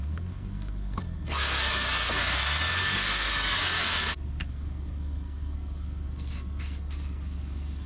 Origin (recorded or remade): remade